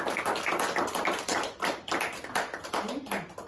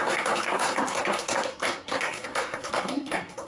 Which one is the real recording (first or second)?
first